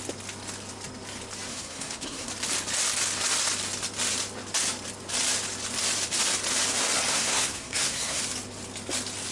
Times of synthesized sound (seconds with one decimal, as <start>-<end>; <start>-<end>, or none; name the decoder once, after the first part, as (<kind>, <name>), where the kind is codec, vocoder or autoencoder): 1.5-2.3 (codec, SNAC); 7.1-8.2